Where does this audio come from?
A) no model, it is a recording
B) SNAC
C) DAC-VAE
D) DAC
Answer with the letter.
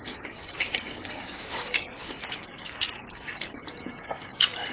D